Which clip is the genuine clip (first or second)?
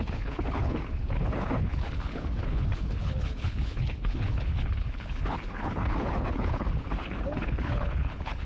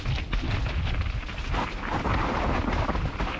second